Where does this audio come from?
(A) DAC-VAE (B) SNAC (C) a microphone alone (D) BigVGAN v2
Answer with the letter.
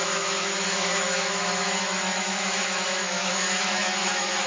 A